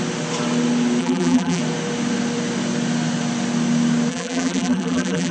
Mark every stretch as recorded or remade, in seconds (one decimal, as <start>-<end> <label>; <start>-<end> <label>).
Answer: 0.0-1.0 recorded; 1.0-1.6 remade; 1.6-4.1 recorded; 4.1-5.3 remade